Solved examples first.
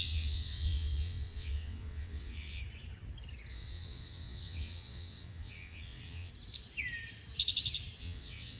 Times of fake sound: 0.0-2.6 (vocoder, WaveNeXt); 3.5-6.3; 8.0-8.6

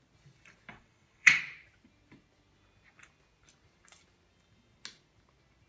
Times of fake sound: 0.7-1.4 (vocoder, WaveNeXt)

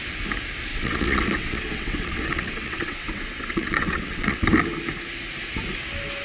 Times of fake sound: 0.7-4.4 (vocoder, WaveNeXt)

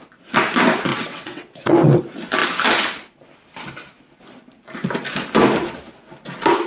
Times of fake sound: 0.9-2.0 (vocoder, WaveNeXt)